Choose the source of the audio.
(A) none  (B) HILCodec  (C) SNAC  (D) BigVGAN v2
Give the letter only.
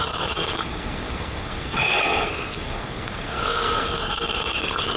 C